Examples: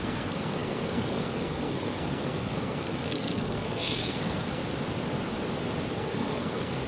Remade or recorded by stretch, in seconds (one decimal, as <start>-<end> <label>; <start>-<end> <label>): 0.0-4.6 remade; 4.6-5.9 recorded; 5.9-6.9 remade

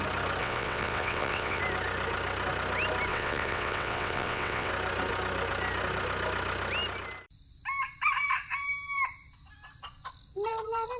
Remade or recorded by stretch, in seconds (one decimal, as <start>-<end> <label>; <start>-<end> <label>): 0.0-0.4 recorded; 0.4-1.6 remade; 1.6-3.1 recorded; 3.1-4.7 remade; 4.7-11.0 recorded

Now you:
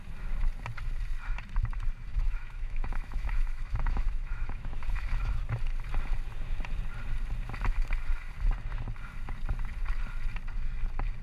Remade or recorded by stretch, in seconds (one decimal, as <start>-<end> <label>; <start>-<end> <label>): 0.0-2.1 recorded; 2.1-5.4 remade; 5.4-11.2 recorded

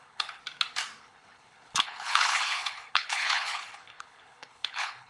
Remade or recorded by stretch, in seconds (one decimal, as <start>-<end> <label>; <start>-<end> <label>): 0.0-0.4 remade; 0.4-1.0 recorded; 1.0-5.1 remade